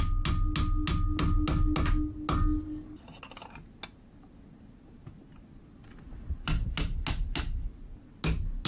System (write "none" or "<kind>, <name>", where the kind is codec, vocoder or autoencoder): none